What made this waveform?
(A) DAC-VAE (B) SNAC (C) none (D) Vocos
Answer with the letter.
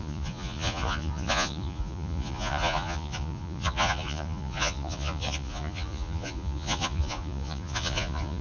D